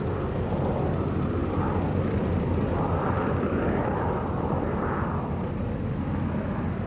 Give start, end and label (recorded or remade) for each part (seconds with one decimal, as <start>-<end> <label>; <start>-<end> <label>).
0.0-6.9 recorded

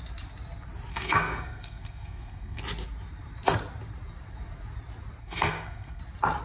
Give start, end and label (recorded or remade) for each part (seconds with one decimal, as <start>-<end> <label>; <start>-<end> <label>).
0.0-0.9 recorded; 0.9-2.6 remade; 2.6-5.2 recorded; 5.2-6.0 remade; 6.0-6.4 recorded